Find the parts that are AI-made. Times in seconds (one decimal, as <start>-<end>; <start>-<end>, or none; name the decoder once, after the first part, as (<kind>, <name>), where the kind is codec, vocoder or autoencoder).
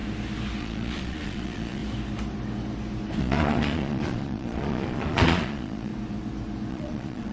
0.6-1.8 (vocoder, Vocos); 3.2-5.9; 6.7-7.3